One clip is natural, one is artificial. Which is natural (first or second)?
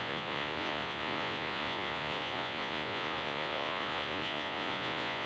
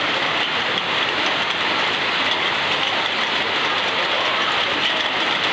second